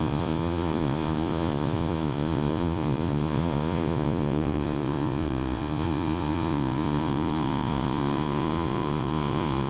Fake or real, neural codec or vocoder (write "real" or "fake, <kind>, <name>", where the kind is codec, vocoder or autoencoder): fake, vocoder, Vocos